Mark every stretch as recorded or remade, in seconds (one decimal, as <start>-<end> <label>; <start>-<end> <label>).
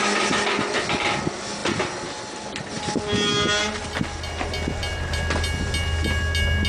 0.0-6.7 recorded